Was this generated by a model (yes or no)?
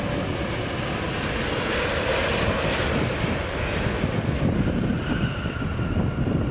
no